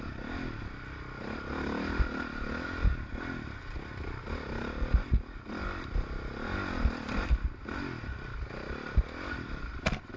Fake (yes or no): no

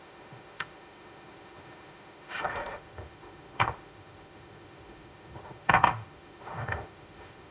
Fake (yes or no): yes